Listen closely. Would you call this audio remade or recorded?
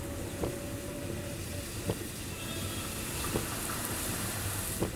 recorded